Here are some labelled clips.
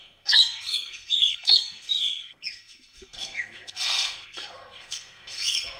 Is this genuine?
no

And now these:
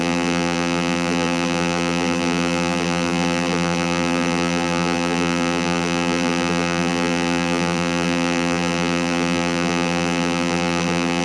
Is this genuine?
no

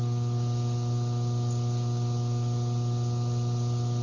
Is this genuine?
yes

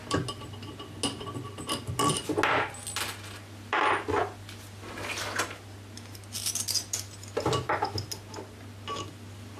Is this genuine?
yes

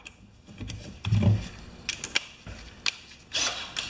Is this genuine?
yes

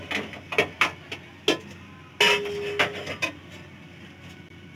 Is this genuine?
yes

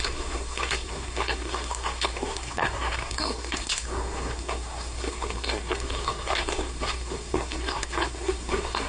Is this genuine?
no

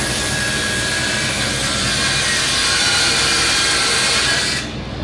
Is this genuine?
no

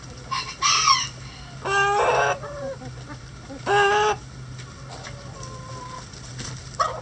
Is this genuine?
yes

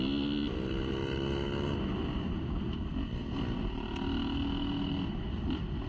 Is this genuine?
yes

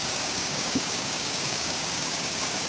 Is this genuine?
no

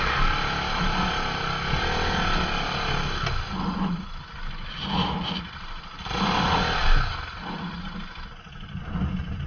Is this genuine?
yes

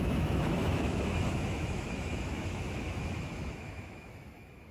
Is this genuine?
no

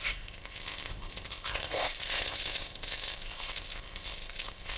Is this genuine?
no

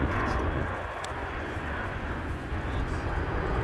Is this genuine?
no